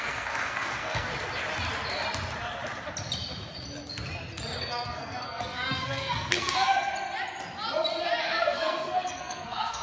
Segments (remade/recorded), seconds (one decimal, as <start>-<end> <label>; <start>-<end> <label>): 0.0-1.1 remade; 1.1-4.6 recorded; 4.6-6.9 remade; 6.9-8.2 recorded; 8.2-9.8 remade